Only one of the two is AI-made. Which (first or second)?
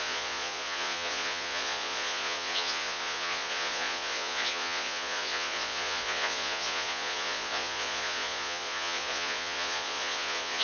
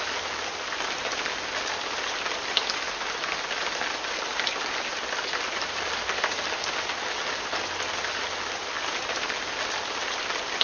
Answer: first